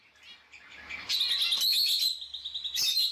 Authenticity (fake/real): real